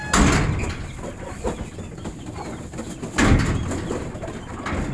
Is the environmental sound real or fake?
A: real